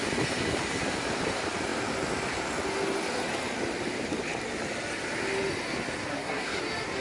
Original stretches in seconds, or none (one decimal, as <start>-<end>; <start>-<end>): 0.0-6.1; 6.6-7.0